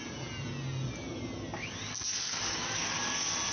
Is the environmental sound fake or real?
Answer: real